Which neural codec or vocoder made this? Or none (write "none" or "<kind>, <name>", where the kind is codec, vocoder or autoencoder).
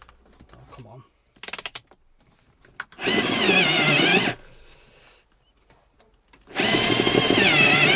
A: none